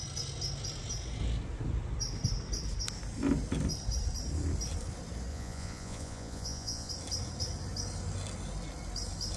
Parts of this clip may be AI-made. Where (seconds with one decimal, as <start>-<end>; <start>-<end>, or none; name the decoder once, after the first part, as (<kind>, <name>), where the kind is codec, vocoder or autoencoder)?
5.3-6.9 (vocoder, Vocos)